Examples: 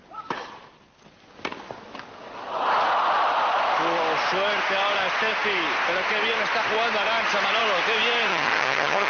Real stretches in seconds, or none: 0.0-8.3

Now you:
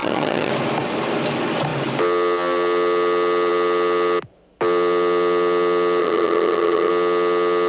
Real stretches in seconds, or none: 0.5-6.0; 6.9-7.7

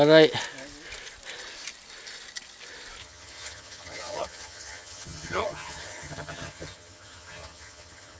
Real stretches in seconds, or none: 0.0-3.0

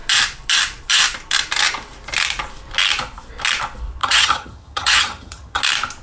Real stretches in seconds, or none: 0.0-4.0; 5.6-6.0

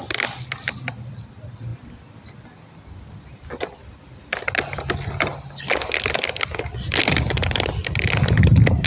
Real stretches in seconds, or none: 0.0-8.9

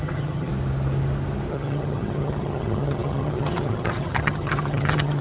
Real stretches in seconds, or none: 0.5-1.5

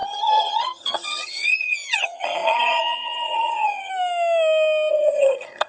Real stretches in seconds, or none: 3.9-4.9